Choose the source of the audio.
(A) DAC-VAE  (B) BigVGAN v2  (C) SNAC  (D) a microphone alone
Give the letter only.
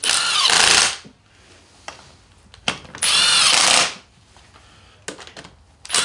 D